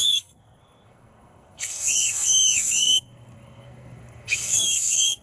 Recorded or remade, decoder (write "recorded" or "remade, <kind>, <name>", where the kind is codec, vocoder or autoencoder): remade, codec, SNAC